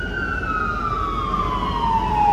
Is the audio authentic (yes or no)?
yes